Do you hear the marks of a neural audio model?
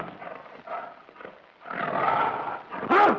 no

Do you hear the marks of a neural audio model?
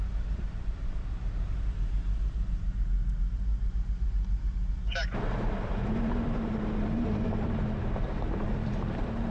yes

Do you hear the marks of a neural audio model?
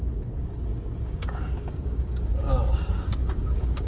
yes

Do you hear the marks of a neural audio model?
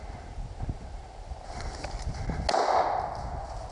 no